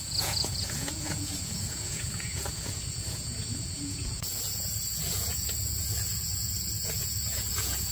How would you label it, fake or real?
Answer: fake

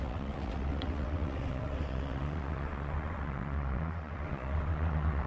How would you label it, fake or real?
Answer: fake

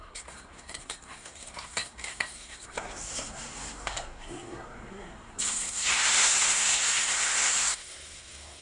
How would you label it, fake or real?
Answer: fake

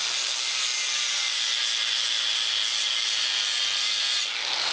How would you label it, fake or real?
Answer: real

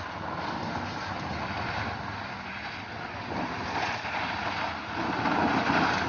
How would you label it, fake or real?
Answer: real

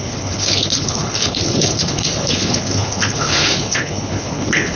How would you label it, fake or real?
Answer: fake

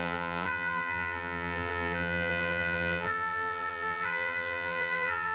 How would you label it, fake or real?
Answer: fake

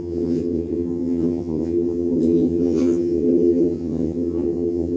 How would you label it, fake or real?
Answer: fake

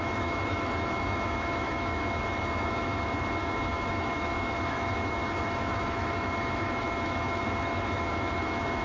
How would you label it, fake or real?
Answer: fake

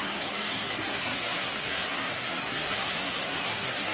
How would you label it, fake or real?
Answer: fake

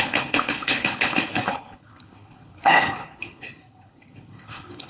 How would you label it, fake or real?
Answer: fake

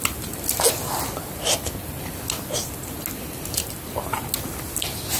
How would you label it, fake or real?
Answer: real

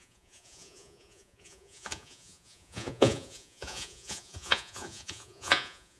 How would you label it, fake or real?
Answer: fake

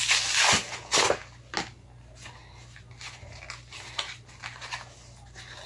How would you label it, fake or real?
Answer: real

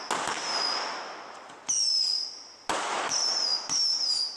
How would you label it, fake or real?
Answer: real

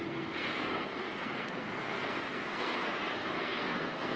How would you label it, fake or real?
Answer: fake